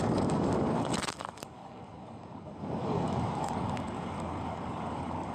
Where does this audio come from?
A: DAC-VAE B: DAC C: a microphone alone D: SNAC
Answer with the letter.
B